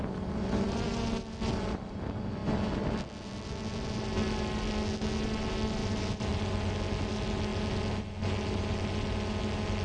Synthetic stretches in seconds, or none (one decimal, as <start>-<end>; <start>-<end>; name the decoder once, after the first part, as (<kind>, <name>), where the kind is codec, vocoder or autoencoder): none